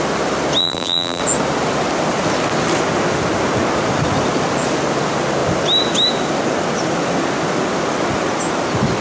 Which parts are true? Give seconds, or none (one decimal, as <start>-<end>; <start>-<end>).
0.0-0.6; 1.2-9.0